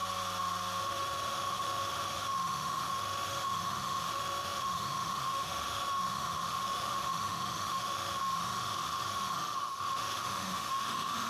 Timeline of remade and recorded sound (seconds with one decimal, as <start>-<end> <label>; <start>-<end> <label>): 0.0-0.8 recorded; 0.8-11.3 remade